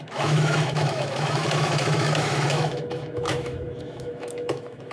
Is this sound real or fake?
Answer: fake